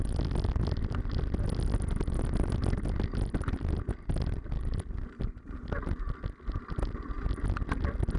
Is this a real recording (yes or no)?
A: yes